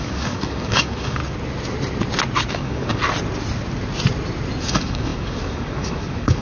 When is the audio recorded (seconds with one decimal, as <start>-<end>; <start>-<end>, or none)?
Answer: 1.2-2.5; 3.0-4.6